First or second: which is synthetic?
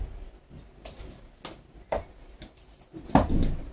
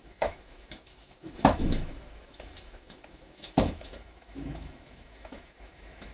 second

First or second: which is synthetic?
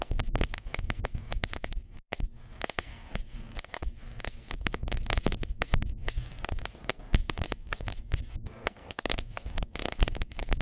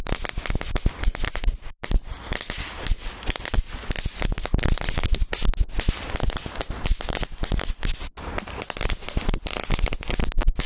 first